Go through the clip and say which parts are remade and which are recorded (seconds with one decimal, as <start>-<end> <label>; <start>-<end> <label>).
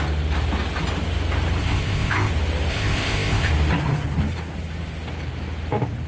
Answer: 0.0-1.6 recorded; 1.6-2.3 remade; 2.3-2.7 recorded; 2.7-3.5 remade; 3.5-6.1 recorded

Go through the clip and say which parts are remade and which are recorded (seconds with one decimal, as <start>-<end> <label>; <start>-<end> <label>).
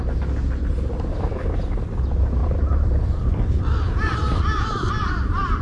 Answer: 0.0-2.4 recorded; 2.4-3.6 remade; 3.6-5.6 recorded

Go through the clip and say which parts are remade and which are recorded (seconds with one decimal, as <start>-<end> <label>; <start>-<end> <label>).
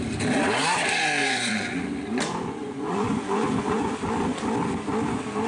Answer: 0.0-1.2 recorded; 1.2-1.8 remade; 1.8-2.6 recorded; 2.6-3.9 remade; 3.9-5.5 recorded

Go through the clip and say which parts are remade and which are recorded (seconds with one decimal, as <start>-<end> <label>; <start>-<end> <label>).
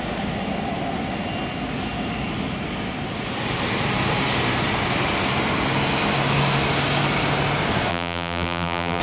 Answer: 0.0-7.9 recorded; 7.9-9.0 remade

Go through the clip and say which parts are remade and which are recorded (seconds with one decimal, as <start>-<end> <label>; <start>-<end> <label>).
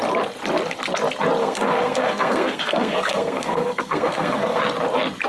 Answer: 0.0-1.4 recorded; 1.4-4.6 remade; 4.6-5.3 recorded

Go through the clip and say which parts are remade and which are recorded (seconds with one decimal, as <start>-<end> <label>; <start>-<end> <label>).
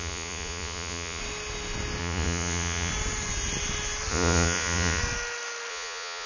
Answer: 0.0-1.2 remade; 1.2-2.0 recorded; 2.0-2.9 remade; 2.9-4.1 recorded; 4.1-5.0 remade; 5.0-5.7 recorded; 5.7-6.3 remade